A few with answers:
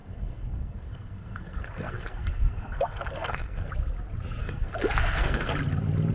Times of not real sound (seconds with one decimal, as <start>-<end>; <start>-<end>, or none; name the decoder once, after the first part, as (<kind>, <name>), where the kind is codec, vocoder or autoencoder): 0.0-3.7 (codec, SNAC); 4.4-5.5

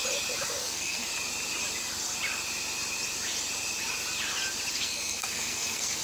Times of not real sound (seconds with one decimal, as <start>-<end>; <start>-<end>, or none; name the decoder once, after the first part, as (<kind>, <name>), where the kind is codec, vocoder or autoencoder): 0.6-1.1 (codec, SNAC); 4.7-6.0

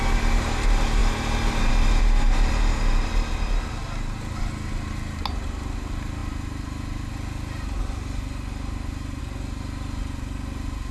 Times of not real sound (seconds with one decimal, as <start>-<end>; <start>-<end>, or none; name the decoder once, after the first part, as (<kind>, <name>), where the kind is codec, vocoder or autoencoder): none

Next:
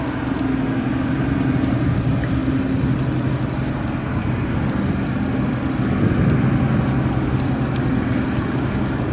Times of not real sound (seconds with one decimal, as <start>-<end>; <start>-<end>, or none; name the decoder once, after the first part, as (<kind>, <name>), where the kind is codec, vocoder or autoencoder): none

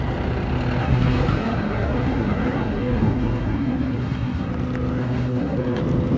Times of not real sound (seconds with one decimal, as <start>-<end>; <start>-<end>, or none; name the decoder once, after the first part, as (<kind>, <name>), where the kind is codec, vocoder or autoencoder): 0.8-4.5 (codec, SNAC); 5.0-5.8

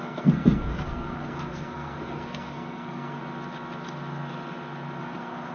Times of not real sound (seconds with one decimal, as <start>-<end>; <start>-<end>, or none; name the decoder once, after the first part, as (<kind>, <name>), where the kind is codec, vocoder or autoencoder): 0.0-3.2 (codec, SNAC); 5.0-5.5